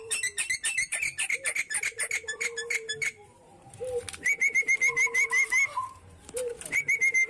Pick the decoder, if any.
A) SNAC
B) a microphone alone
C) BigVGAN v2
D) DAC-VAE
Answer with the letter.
C